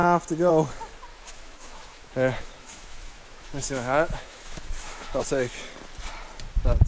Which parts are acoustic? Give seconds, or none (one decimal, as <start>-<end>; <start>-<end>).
0.0-1.1; 5.2-6.9